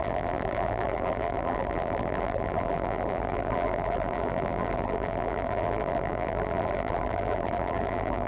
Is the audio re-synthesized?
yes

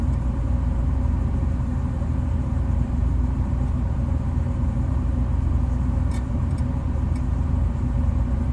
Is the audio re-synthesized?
yes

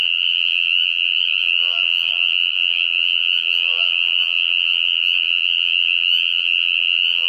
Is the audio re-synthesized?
yes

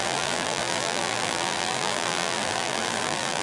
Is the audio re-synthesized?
yes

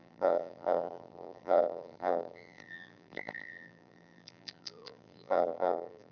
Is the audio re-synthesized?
yes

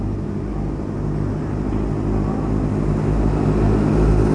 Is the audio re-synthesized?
no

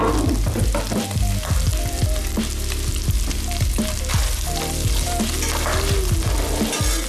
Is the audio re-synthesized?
no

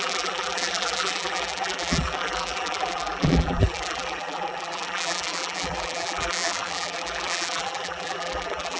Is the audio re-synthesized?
yes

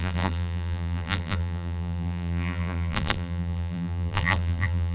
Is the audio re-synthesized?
yes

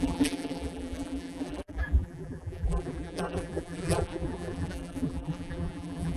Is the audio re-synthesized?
yes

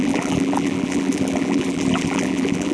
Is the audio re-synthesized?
yes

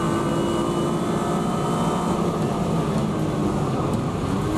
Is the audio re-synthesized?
no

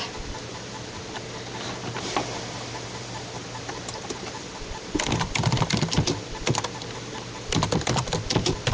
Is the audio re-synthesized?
yes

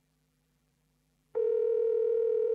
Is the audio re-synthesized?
yes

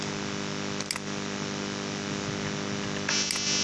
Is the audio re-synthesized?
no